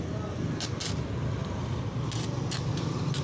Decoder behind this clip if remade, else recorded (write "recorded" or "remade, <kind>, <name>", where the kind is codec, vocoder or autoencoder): recorded